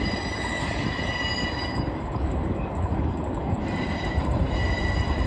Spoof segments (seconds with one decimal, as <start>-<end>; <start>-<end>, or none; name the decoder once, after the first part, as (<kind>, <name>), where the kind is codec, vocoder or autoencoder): 1.7-3.6 (codec, DAC)